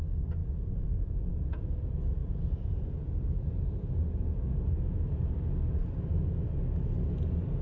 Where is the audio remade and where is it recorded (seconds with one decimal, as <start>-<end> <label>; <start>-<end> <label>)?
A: 0.0-0.4 recorded; 0.4-1.3 remade; 1.3-2.2 recorded; 2.2-5.1 remade; 5.1-7.6 recorded